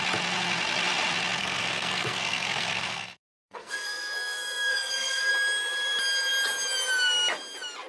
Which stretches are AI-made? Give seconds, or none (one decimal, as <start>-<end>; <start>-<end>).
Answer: 1.4-5.3